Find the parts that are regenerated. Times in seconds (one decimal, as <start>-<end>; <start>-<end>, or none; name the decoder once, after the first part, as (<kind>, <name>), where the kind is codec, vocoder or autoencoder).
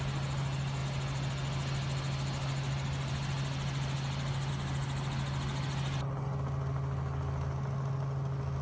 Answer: none